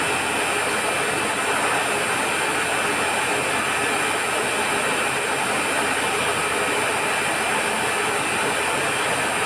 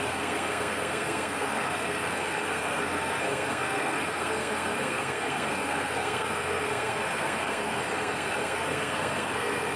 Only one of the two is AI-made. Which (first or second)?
second